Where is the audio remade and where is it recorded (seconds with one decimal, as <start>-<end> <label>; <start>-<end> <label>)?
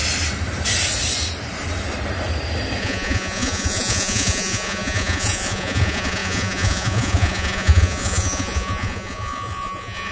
0.0-2.8 recorded; 2.8-10.1 remade